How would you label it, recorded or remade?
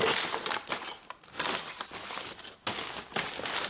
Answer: recorded